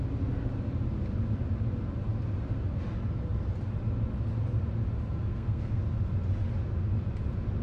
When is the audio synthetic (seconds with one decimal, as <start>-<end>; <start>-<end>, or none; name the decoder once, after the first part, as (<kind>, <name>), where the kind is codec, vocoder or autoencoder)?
5.3-5.8 (codec, SNAC)